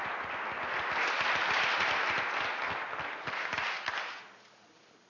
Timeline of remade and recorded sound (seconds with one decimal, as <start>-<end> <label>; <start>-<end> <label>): 0.0-5.1 recorded